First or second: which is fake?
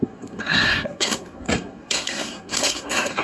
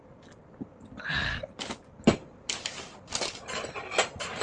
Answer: first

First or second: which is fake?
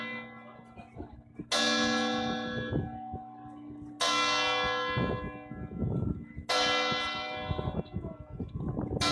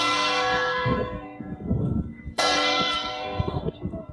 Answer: second